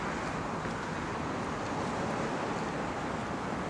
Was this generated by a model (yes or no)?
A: no